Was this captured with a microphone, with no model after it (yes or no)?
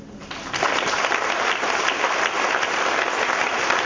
yes